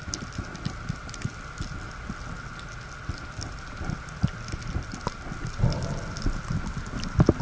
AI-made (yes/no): no